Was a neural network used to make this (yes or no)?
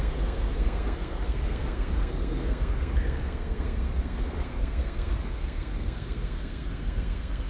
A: yes